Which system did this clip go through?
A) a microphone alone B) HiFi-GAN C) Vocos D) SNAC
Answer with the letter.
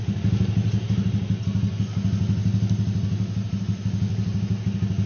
A